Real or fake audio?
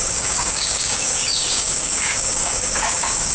fake